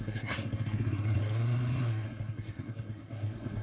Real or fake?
fake